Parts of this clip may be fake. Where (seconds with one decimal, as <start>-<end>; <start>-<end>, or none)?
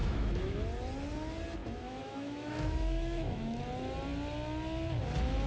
0.0-0.6; 1.6-3.6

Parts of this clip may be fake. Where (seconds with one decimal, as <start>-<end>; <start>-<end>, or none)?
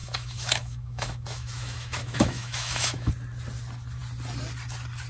0.0-3.1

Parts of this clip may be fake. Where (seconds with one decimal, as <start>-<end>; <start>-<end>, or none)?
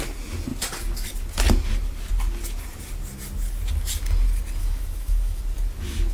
4.6-5.4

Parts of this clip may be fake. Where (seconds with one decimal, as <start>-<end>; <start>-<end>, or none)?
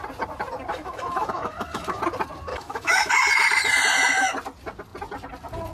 0.7-2.0; 2.5-3.1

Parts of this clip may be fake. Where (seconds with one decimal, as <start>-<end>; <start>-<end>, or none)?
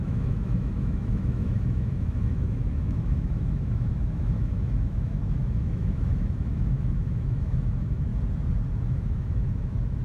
0.0-8.1; 8.8-10.0